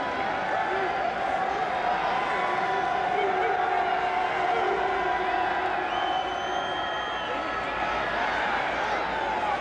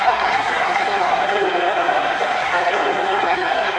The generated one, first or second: second